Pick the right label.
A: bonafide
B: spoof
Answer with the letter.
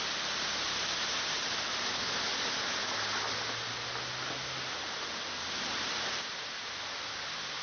A